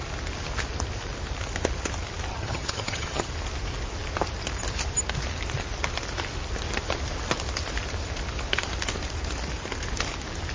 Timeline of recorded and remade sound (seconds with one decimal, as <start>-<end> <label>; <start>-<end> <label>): 0.0-2.3 recorded; 2.3-3.3 remade; 3.3-10.5 recorded